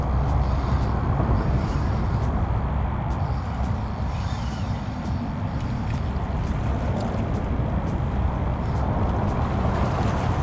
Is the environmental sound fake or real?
real